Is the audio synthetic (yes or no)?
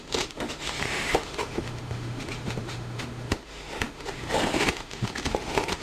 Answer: yes